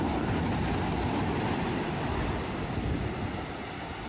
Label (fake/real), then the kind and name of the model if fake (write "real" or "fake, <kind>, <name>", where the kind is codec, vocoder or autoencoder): real